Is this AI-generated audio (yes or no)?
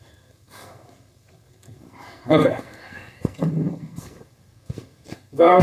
yes